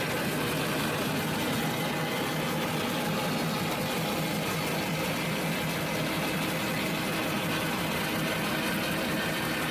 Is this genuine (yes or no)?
yes